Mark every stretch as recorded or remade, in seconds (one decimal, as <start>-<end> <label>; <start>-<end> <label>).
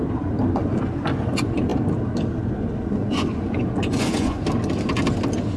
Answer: 0.0-3.0 recorded; 3.0-4.4 remade; 4.4-5.6 recorded